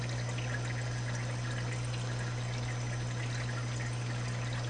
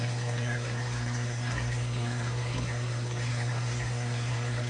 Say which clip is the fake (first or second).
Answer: second